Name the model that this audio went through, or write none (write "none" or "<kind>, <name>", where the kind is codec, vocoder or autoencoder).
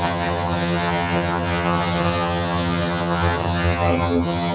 vocoder, HiFi-GAN